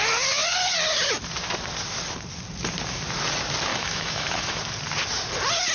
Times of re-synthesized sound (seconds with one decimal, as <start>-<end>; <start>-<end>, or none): 3.7-4.6